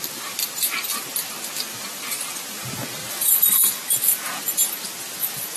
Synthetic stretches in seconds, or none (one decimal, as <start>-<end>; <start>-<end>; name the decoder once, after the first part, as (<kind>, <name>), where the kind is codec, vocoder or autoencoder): none